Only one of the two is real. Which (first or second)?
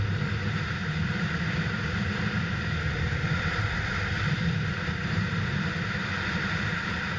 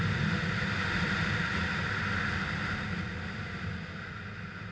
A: second